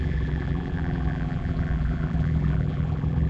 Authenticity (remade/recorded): remade